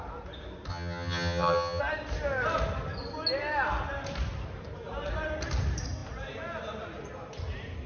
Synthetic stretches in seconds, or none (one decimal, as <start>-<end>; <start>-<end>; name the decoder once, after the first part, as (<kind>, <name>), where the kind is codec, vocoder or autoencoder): 0.7-1.8 (vocoder, HiFi-GAN)